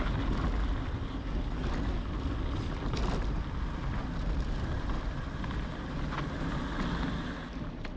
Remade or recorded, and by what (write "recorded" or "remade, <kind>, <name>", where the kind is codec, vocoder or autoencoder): recorded